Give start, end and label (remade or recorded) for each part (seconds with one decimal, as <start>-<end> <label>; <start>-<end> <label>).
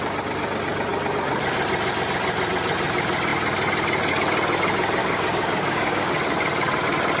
0.0-5.0 recorded; 5.0-6.1 remade; 6.1-7.2 recorded